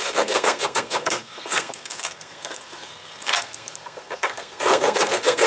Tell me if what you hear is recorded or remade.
remade